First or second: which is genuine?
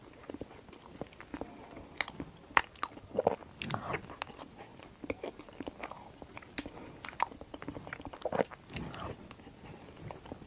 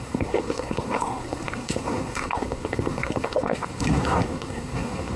first